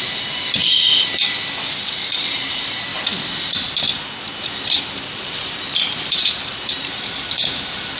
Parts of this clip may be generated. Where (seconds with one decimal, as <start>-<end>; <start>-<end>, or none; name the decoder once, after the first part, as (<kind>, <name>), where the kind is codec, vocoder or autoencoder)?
0.0-2.9 (vocoder, BigVGAN v2); 3.4-3.9; 4.7-8.0